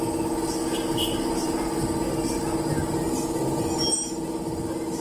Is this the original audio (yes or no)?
yes